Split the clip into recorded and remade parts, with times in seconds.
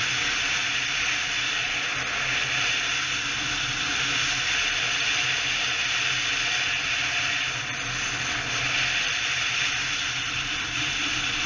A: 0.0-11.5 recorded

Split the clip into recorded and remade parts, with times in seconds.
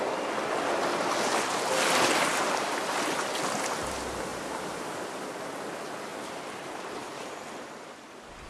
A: 0.0-4.3 recorded; 4.3-5.0 remade; 5.0-6.1 recorded; 6.1-7.7 remade; 7.7-8.5 recorded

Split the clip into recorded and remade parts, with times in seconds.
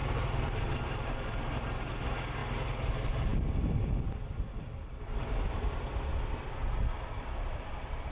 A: 0.0-1.9 remade; 1.9-8.1 recorded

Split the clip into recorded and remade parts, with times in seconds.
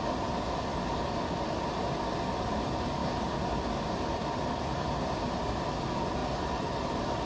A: 0.0-0.7 remade; 0.7-2.0 recorded; 2.0-6.2 remade; 6.2-7.3 recorded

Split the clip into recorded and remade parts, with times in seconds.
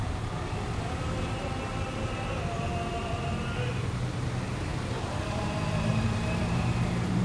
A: 0.0-4.7 recorded; 4.7-5.4 remade; 5.4-5.9 recorded; 5.9-7.2 remade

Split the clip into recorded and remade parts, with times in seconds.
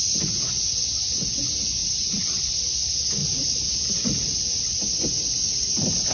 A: 0.0-1.8 recorded; 1.8-2.4 remade; 2.4-3.2 recorded; 3.2-4.6 remade; 4.6-6.1 recorded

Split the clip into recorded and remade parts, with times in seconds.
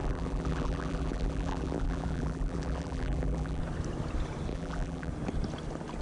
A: 0.0-3.6 remade; 3.6-4.5 recorded; 4.5-5.1 remade; 5.1-6.0 recorded